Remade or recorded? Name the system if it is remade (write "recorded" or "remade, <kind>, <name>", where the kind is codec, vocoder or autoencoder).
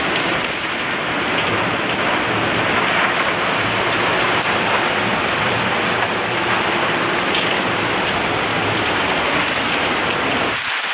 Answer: recorded